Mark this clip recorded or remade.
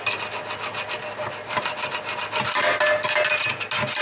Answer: recorded